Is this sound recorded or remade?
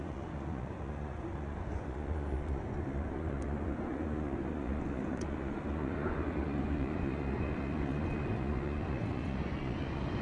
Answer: remade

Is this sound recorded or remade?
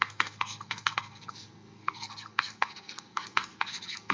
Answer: remade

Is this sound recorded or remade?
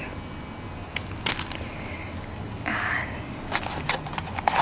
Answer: recorded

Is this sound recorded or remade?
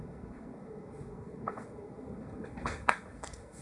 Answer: remade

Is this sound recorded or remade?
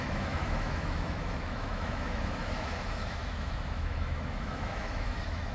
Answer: remade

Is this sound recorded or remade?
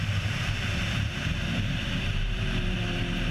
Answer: remade